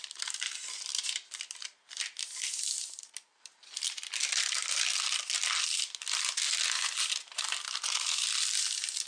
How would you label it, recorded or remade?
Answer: recorded